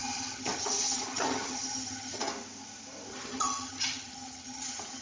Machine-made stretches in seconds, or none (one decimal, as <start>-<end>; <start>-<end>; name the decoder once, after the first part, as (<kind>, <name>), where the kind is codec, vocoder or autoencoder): 0.0-2.3 (vocoder, HiFi-GAN); 3.1-5.0